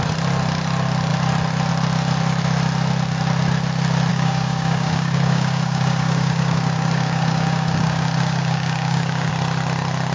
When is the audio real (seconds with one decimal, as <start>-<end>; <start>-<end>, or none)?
0.0-4.1; 9.3-10.1